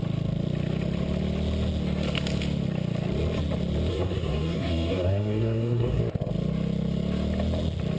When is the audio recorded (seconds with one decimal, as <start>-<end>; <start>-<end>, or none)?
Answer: 0.0-3.9; 6.0-8.0